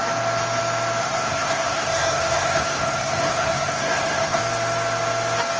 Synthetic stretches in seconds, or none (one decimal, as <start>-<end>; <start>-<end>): 1.0-4.4